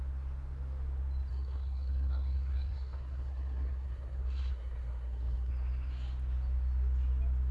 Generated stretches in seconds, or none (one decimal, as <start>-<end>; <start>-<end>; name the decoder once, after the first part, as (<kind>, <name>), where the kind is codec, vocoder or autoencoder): 1.3-5.5 (codec, SNAC)